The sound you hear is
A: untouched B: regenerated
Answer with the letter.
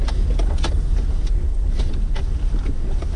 A